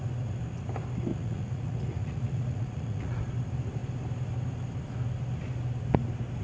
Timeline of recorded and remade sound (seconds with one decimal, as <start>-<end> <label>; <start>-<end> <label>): 0.0-1.1 recorded; 1.1-3.2 remade; 3.2-6.4 recorded